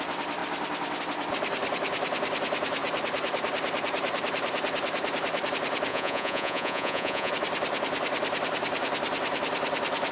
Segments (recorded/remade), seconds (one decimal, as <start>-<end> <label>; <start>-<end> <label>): 0.0-5.9 recorded; 5.9-7.3 remade; 7.3-10.1 recorded